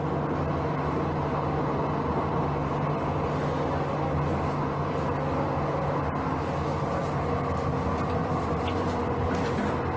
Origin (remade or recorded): recorded